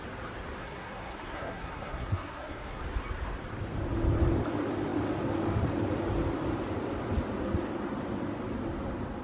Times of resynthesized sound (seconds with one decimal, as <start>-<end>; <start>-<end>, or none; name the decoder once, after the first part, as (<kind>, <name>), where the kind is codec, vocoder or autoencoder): 0.6-2.8 (codec, SNAC)